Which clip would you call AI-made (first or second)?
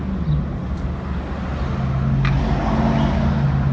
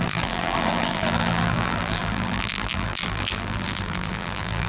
second